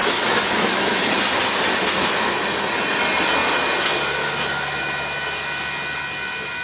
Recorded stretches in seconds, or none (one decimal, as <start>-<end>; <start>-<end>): 1.1-6.6